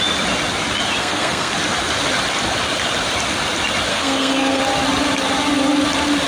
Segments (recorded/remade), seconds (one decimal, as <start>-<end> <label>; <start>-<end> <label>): 0.0-1.0 recorded; 1.0-1.5 remade; 1.5-3.9 recorded; 3.9-4.6 remade; 4.6-6.3 recorded